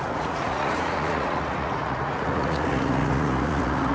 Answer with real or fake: fake